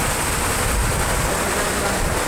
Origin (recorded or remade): recorded